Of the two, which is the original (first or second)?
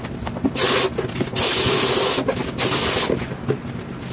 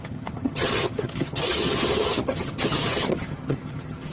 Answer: first